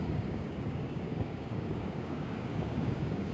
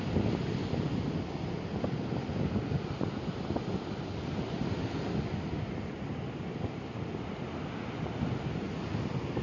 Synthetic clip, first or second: first